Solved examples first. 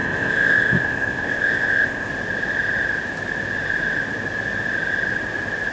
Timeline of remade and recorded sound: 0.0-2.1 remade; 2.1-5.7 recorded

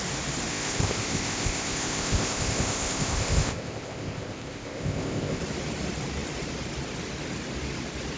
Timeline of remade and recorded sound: 0.0-0.5 recorded; 0.5-5.4 remade; 5.4-8.2 recorded